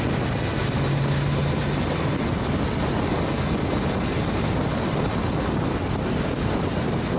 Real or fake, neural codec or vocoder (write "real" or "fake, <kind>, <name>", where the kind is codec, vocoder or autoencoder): real